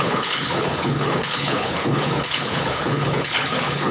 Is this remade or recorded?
remade